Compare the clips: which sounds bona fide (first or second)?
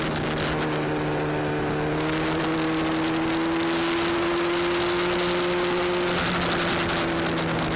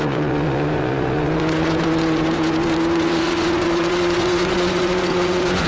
first